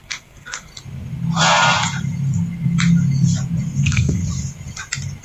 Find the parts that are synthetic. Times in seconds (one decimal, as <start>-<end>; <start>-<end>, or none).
0.0-0.7; 3.8-4.2